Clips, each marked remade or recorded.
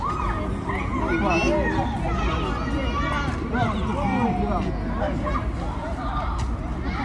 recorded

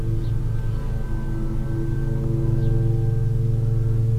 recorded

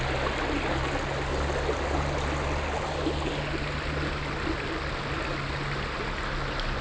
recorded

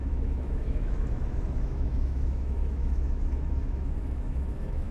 remade